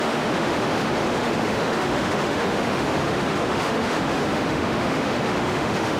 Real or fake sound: fake